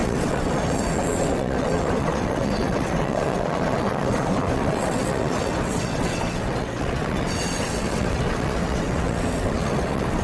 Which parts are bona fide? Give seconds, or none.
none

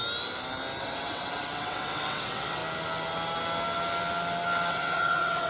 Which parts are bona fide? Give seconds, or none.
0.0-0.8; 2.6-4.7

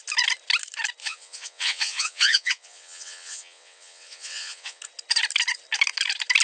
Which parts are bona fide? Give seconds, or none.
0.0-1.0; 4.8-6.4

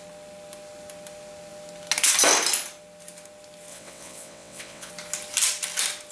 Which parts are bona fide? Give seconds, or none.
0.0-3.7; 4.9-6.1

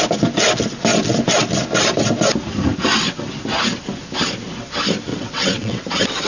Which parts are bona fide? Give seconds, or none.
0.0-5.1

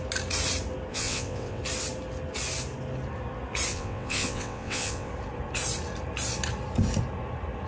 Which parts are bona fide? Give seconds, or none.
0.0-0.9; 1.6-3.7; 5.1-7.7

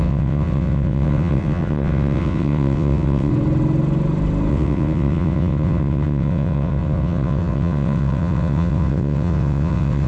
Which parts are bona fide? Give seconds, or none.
3.3-4.5